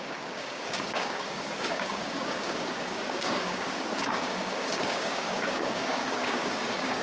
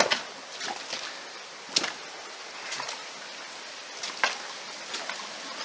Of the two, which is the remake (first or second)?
first